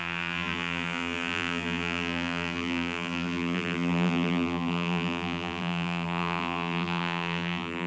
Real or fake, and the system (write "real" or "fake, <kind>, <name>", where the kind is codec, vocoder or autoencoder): fake, vocoder, BigVGAN v2